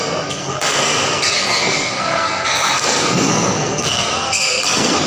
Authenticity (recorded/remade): remade